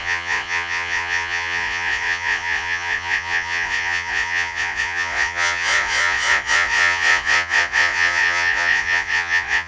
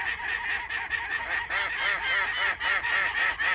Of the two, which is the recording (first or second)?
second